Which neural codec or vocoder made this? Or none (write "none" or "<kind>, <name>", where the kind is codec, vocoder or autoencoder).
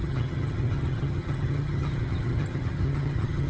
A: vocoder, HiFi-GAN